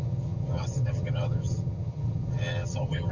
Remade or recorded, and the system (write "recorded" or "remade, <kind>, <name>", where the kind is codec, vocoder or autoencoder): remade, vocoder, HiFi-GAN